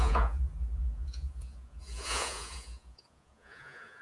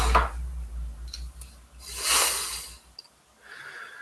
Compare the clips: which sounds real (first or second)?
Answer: second